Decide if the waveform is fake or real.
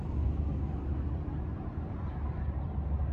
real